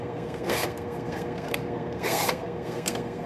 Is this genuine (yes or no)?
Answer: no